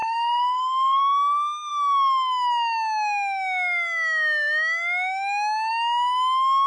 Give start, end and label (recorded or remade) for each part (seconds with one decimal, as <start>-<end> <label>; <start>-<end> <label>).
0.0-1.0 remade; 1.0-6.7 recorded